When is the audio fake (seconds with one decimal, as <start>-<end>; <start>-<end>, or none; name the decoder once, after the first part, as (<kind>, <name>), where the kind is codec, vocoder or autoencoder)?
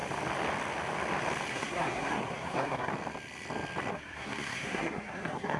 1.5-2.9 (codec, SNAC); 3.9-5.6